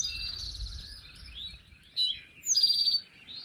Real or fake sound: real